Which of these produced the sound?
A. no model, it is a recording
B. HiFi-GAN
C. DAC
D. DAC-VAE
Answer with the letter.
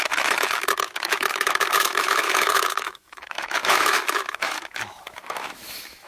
D